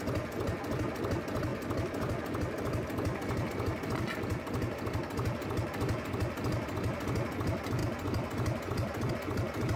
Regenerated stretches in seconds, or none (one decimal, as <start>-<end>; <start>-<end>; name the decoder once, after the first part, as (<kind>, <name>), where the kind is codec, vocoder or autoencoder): none